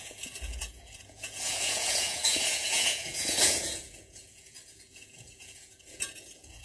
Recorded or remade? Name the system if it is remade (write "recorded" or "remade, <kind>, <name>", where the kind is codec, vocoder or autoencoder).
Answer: remade, vocoder, Vocos